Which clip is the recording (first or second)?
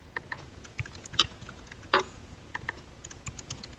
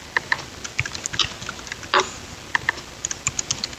second